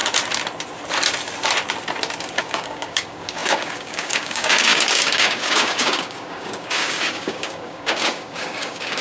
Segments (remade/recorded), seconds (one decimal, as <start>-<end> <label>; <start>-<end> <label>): 0.0-2.4 recorded; 2.4-9.0 remade